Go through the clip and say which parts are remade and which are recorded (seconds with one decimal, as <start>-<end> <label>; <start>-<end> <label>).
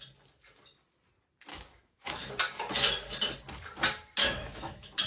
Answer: 0.0-1.5 recorded; 1.5-2.3 remade; 2.3-4.2 recorded; 4.2-5.1 remade